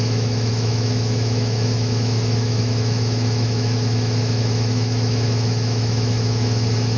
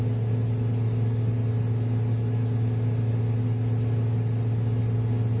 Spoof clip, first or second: first